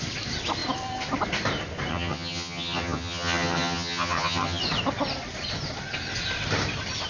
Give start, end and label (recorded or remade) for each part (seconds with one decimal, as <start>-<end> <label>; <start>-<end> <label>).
0.0-1.9 recorded; 1.9-4.6 remade; 4.6-7.1 recorded